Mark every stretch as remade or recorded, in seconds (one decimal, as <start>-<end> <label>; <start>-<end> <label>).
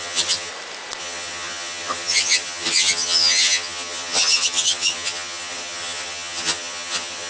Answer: 0.0-0.5 remade; 0.5-1.0 recorded; 1.0-7.3 remade